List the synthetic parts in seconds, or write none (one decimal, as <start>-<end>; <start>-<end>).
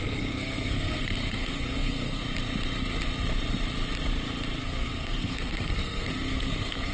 0.0-2.2; 4.6-6.9